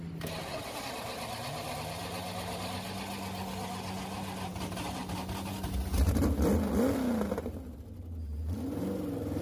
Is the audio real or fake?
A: real